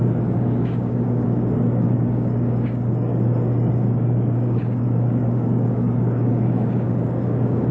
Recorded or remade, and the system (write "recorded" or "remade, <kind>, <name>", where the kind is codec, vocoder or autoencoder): remade, codec, DAC